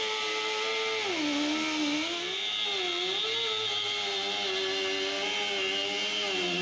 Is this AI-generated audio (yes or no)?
no